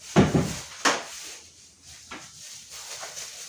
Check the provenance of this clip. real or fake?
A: real